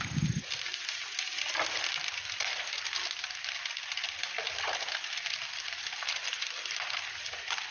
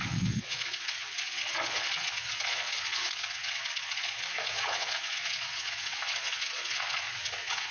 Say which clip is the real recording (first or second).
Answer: first